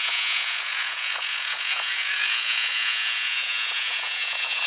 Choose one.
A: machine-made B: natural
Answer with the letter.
A